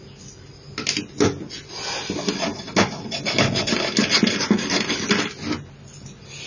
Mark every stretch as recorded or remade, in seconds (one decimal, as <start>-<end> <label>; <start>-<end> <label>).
0.0-6.5 recorded

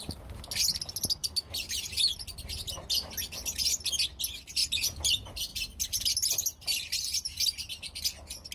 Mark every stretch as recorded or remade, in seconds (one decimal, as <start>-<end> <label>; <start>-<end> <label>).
0.0-1.2 recorded; 1.2-1.8 remade; 1.8-5.5 recorded; 5.5-7.6 remade; 7.6-8.5 recorded